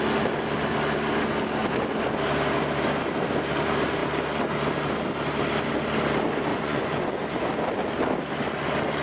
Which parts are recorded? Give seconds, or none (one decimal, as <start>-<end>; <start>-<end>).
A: 0.0-6.5; 7.1-9.0

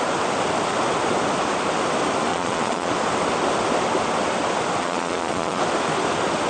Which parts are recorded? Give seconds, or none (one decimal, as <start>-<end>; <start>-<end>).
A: 0.0-2.3; 2.9-4.8; 5.6-6.5